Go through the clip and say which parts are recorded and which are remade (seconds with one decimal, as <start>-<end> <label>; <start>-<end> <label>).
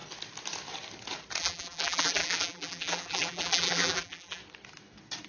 0.0-1.4 recorded; 1.4-4.4 remade; 4.4-5.3 recorded